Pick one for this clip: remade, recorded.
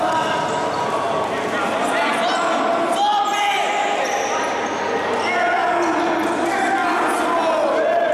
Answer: recorded